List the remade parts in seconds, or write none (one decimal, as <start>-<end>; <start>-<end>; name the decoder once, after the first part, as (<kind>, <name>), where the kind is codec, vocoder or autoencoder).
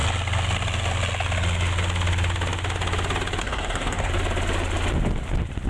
3.4-4.1 (codec, SNAC)